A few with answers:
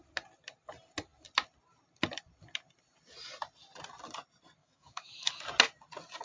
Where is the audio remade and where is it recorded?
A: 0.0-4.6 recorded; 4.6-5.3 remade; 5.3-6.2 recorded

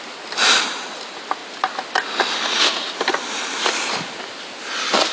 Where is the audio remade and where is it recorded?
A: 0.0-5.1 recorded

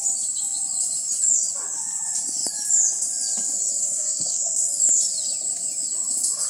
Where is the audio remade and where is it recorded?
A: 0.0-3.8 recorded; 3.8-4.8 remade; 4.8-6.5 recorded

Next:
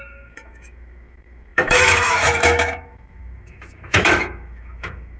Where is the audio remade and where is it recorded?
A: 0.0-5.2 remade

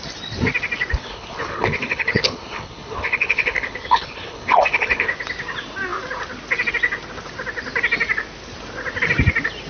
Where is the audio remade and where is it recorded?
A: 0.0-0.9 recorded; 0.9-5.1 remade; 5.1-9.7 recorded

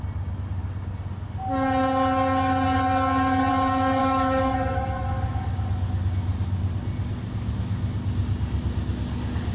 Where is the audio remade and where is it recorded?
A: 0.0-4.0 recorded; 4.0-5.1 remade; 5.1-9.5 recorded